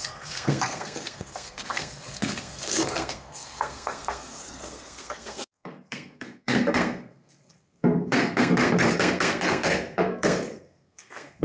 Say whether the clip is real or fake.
fake